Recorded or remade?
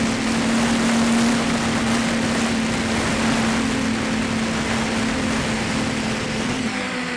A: recorded